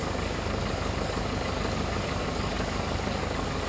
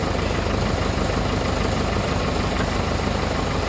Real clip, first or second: second